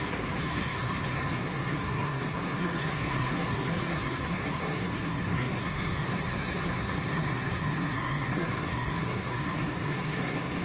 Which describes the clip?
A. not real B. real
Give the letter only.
A